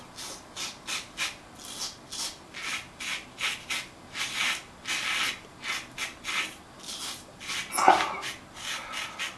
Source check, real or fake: real